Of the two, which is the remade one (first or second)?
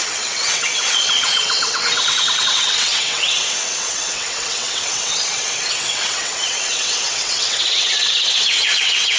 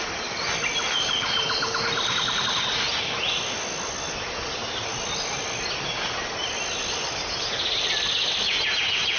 first